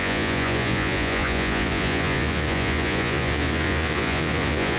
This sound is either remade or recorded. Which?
remade